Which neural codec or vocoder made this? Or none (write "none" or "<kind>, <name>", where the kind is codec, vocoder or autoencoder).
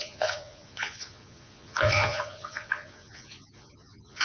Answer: vocoder, Vocos